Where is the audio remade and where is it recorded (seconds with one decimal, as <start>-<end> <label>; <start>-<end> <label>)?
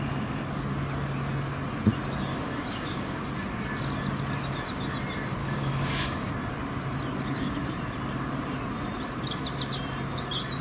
0.0-2.3 recorded; 2.3-3.2 remade; 3.2-5.4 recorded; 5.4-6.3 remade; 6.3-10.6 recorded